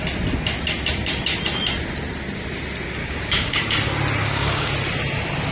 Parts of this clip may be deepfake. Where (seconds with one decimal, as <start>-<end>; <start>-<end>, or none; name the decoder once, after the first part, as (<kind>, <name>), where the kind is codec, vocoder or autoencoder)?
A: 3.0-3.6 (codec, DAC); 4.2-4.7